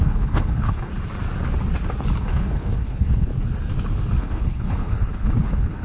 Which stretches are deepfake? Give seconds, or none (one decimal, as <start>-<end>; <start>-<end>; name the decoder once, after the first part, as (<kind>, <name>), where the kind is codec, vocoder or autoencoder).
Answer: 0.0-0.9 (codec, HILCodec); 2.2-3.3; 4.2-5.8